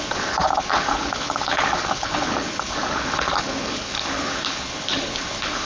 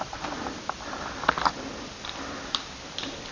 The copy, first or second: first